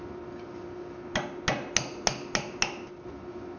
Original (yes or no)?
yes